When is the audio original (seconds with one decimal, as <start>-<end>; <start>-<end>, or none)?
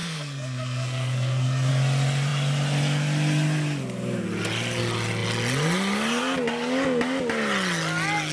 1.7-8.3